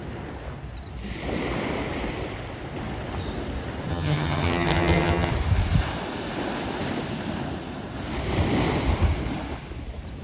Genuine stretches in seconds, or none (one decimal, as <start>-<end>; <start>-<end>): 0.0-3.9; 5.3-10.2